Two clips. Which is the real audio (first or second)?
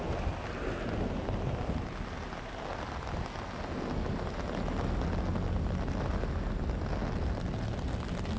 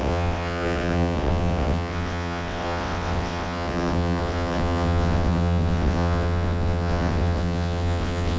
first